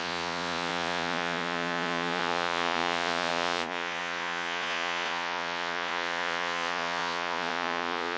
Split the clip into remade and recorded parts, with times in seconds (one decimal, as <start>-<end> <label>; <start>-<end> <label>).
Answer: 0.0-8.2 remade